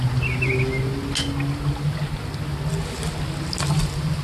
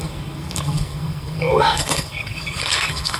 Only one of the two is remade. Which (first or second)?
second